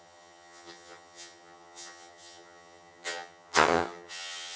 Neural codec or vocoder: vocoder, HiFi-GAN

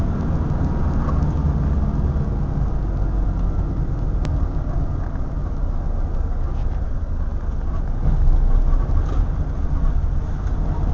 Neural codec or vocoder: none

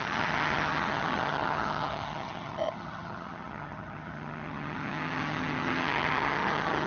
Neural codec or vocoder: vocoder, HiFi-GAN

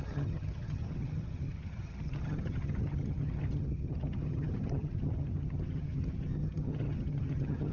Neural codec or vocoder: vocoder, HiFi-GAN